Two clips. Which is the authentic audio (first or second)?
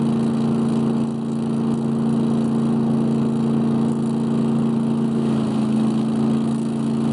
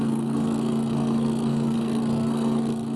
first